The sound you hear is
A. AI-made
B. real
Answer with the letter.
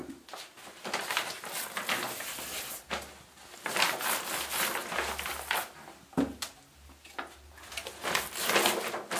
B